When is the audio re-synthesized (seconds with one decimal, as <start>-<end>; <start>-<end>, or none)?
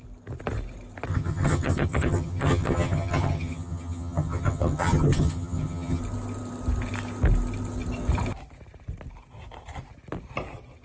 1.1-6.0